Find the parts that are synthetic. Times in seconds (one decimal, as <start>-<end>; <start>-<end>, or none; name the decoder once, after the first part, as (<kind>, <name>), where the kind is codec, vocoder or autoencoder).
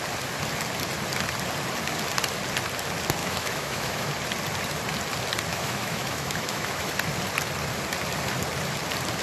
3.2-4.1 (autoencoder, DAC-VAE); 5.5-6.9